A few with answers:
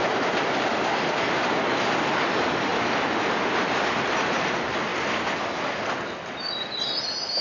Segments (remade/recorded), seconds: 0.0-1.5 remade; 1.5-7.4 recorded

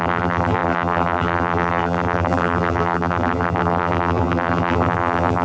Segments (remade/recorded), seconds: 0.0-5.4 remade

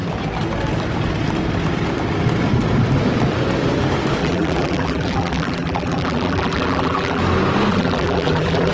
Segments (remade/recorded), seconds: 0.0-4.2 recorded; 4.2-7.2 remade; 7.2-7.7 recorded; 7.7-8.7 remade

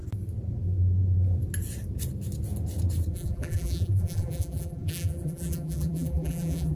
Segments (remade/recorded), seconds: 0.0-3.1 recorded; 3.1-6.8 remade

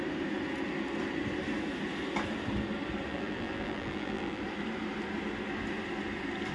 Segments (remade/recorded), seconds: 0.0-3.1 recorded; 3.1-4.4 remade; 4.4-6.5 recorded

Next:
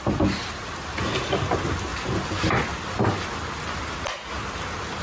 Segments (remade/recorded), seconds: 0.0-5.0 recorded

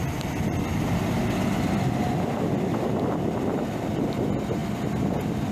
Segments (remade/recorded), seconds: 0.0-5.5 recorded